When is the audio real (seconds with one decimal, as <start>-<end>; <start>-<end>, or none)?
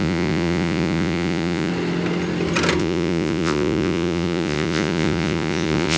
1.7-2.8